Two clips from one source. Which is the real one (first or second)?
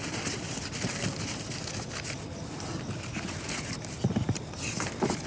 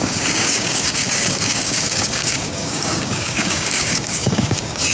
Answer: first